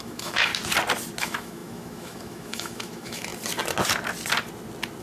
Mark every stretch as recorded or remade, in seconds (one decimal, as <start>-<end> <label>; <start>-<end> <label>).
0.0-0.5 remade; 0.5-1.2 recorded; 1.2-3.3 remade; 3.3-5.0 recorded